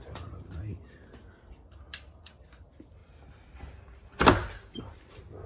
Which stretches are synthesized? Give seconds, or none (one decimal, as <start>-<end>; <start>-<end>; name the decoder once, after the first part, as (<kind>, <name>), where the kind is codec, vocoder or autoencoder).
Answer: 0.0-3.0 (vocoder, BigVGAN v2); 4.8-5.5